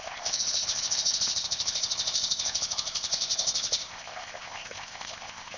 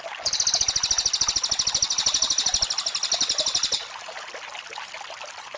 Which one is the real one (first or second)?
second